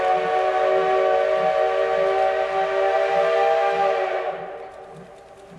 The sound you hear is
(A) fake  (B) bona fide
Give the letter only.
B